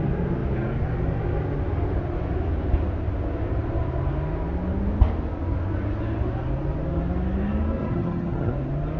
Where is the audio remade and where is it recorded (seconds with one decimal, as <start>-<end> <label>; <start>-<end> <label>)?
0.0-7.8 recorded; 7.8-8.5 remade; 8.5-9.0 recorded